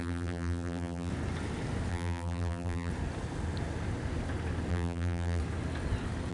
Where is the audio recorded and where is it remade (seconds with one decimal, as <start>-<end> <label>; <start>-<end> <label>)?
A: 0.0-1.1 remade; 1.1-1.9 recorded; 1.9-2.9 remade; 2.9-4.7 recorded; 4.7-5.4 remade; 5.4-6.3 recorded